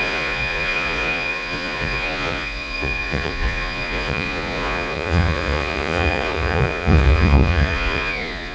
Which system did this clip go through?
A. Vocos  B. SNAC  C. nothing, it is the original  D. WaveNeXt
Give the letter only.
A